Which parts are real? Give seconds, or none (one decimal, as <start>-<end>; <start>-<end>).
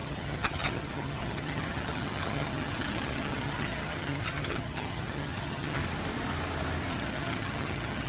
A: 5.8-6.9